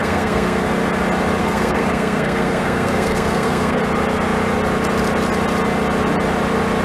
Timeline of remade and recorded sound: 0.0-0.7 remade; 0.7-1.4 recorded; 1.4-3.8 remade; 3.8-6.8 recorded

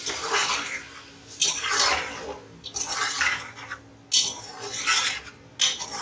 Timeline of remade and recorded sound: 0.0-6.0 recorded

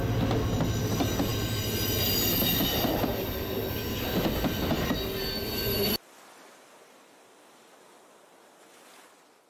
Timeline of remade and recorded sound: 0.0-9.5 recorded

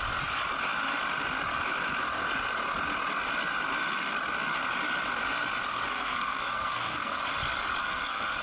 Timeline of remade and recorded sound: 0.0-5.9 recorded; 5.9-7.2 remade; 7.2-7.8 recorded; 7.8-8.4 remade

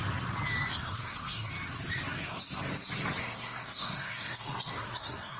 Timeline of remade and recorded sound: 0.0-0.7 recorded; 0.7-1.5 remade; 1.5-3.2 recorded; 3.2-5.4 remade

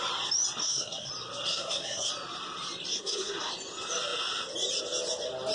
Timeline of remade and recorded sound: 0.0-0.6 recorded; 0.6-1.1 remade; 1.1-1.5 recorded; 1.5-2.1 remade; 2.1-2.9 recorded; 2.9-3.5 remade; 3.5-5.5 recorded

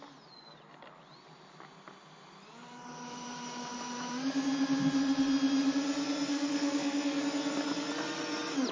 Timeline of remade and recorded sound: 0.0-6.3 recorded; 6.3-7.2 remade; 7.2-8.7 recorded